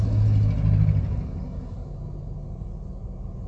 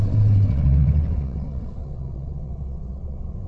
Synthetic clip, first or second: second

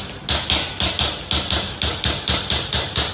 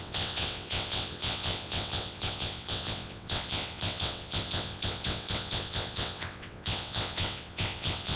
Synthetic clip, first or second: second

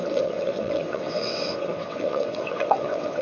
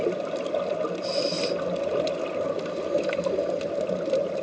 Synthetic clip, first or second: first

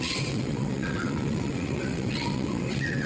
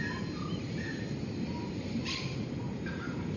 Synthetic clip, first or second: first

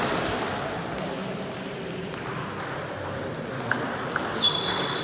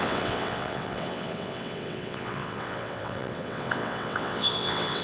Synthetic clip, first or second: second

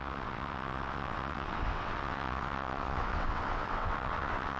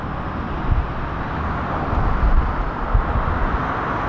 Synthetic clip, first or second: first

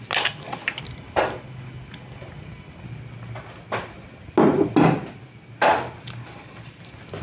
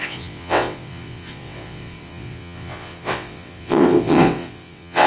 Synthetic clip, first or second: second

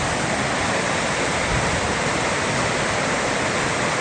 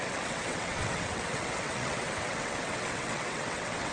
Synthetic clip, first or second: second